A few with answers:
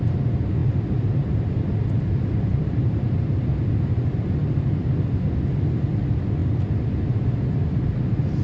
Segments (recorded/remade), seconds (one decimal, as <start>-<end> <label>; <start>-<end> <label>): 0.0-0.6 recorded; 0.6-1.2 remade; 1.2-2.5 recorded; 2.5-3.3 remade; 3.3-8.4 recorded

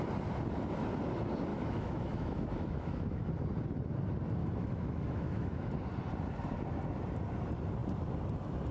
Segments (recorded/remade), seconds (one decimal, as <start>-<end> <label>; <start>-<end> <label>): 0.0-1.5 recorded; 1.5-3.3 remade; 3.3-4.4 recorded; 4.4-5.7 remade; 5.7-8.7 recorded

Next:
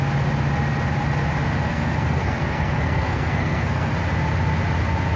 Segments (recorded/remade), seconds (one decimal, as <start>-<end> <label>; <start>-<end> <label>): 0.0-1.7 recorded; 1.7-3.9 remade; 3.9-5.2 recorded